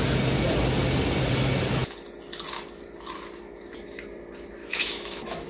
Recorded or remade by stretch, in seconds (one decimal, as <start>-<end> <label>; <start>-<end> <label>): 0.0-4.6 recorded; 4.6-5.5 remade